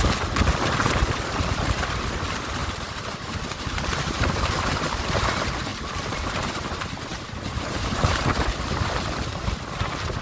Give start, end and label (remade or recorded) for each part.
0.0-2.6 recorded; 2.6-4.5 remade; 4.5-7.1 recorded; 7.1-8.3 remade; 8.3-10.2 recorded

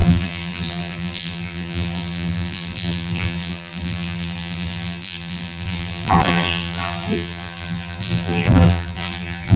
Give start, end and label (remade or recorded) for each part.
0.0-9.6 remade

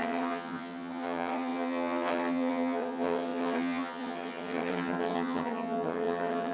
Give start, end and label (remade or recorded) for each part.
0.0-6.5 remade

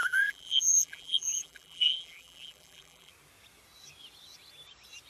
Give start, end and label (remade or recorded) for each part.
0.0-3.1 remade; 3.1-5.1 recorded

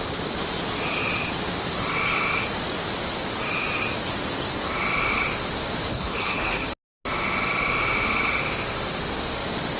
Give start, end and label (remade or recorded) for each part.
0.0-5.9 recorded; 5.9-6.7 remade; 6.7-9.8 recorded

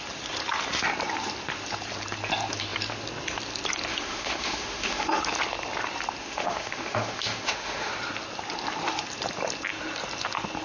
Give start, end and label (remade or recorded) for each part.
0.0-3.9 recorded; 3.9-5.2 remade; 5.2-6.2 recorded; 6.2-7.9 remade; 7.9-10.6 recorded

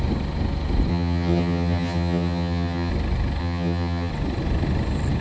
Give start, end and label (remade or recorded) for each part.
0.0-0.9 recorded; 0.9-2.9 remade; 2.9-3.4 recorded; 3.4-4.1 remade; 4.1-5.2 recorded